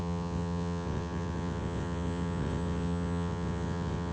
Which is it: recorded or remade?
remade